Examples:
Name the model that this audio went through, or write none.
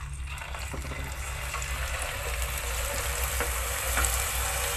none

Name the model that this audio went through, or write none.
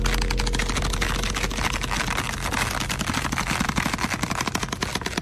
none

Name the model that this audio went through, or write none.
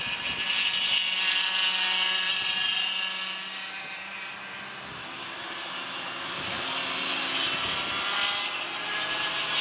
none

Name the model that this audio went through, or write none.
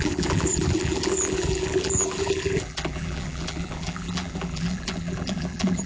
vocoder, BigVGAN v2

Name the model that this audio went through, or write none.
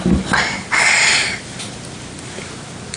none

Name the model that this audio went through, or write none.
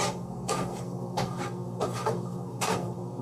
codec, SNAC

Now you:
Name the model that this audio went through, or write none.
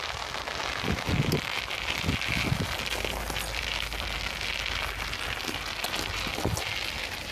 none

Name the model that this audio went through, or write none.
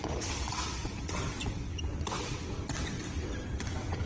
vocoder, WaveNeXt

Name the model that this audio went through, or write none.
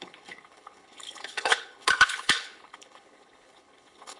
codec, HILCodec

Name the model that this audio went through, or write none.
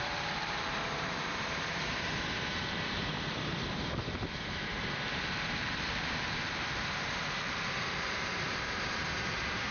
vocoder, BigVGAN v2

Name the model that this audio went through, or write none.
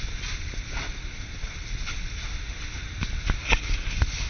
none